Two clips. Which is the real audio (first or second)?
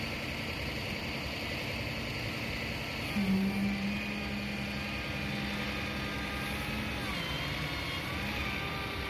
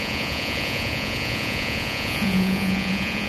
first